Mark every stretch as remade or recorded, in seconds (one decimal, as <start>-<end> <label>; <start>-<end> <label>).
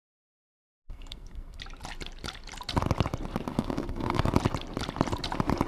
0.0-1.6 remade; 1.6-3.5 recorded; 3.5-4.3 remade; 4.3-5.7 recorded